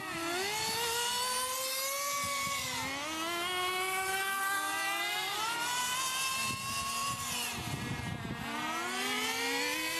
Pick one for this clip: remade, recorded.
recorded